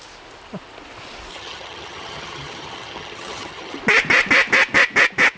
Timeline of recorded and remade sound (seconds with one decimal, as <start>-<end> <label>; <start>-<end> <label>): 0.0-1.3 recorded; 1.3-3.8 remade; 3.8-5.4 recorded